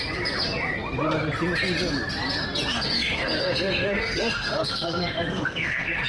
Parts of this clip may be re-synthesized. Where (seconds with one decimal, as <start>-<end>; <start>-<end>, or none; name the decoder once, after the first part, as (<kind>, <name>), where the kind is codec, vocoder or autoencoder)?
2.7-6.1 (codec, SNAC)